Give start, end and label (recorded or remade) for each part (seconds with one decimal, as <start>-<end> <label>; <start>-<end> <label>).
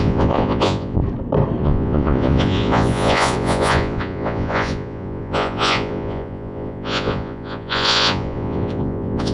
0.0-1.0 remade; 1.0-1.6 recorded; 1.6-9.3 remade